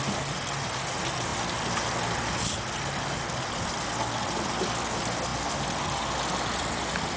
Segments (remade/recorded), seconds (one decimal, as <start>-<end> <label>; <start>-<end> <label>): 0.0-7.2 recorded